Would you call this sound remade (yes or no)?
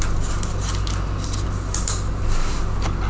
no